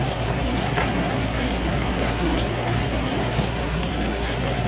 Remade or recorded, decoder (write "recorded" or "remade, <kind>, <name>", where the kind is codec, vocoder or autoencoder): remade, codec, SNAC